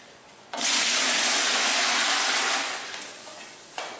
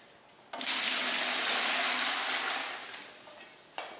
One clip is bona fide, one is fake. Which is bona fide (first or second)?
second